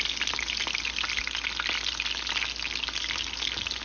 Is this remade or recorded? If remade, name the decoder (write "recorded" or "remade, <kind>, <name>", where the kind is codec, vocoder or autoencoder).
recorded